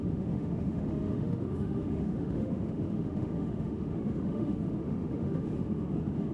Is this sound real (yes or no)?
no